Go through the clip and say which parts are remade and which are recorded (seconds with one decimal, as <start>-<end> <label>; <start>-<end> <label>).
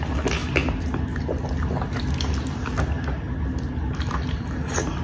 0.0-5.0 recorded